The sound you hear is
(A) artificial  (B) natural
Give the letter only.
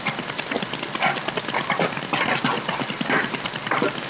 B